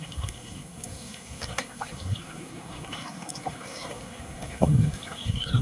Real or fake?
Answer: fake